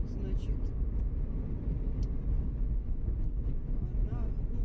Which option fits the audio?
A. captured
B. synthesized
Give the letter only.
A